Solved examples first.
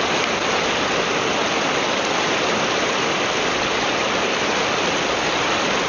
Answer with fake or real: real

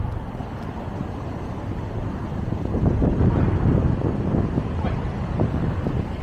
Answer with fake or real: real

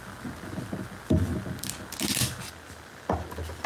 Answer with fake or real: real